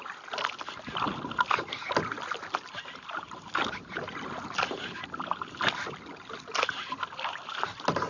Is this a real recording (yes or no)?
yes